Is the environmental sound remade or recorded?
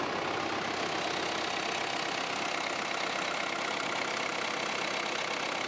recorded